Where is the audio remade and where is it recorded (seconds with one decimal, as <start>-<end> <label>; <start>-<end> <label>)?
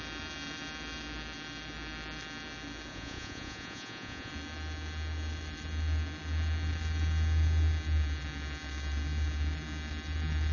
0.0-2.9 recorded; 2.9-4.3 remade; 4.3-10.5 recorded